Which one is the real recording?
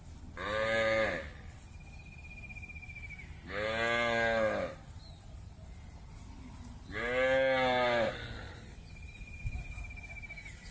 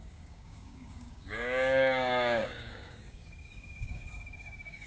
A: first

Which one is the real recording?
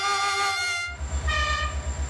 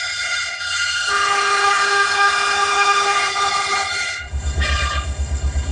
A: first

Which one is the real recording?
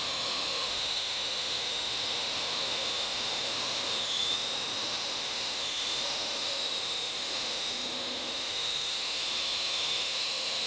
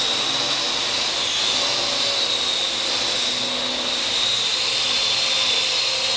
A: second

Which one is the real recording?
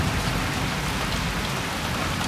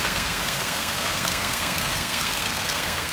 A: first